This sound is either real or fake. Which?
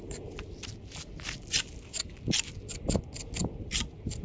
real